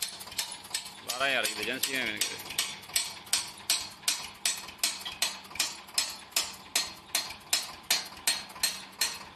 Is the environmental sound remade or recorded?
recorded